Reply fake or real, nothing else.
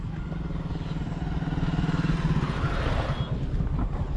real